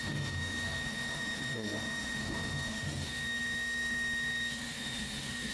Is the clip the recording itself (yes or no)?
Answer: no